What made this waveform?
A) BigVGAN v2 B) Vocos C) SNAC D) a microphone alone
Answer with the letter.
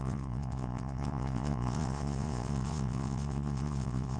B